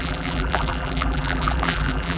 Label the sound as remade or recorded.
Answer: remade